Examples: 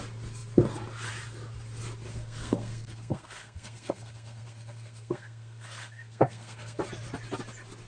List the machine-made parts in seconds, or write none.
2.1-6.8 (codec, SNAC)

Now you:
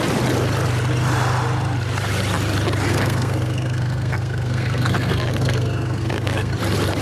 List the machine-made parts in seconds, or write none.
2.9-6.5 (codec, SNAC)

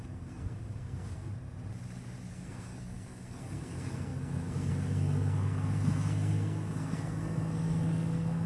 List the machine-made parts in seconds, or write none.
0.0-1.3 (codec, SNAC); 2.3-8.5

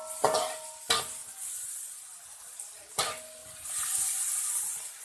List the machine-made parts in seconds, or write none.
none

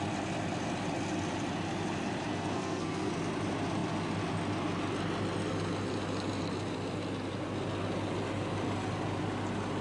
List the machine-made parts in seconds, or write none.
2.3-3.1 (codec, SNAC)

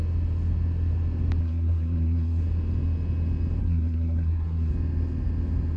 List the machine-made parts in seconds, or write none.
1.4-2.4 (codec, SNAC); 3.6-4.7

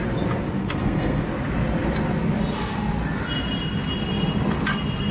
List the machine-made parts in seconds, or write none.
0.6-1.2 (codec, SNAC)